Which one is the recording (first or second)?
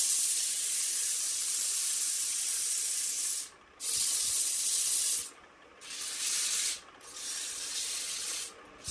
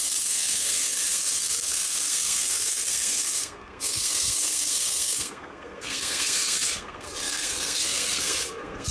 first